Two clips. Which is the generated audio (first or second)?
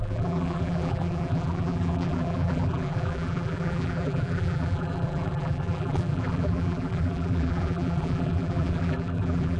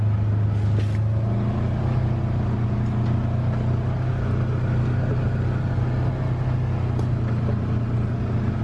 first